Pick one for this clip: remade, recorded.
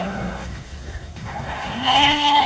remade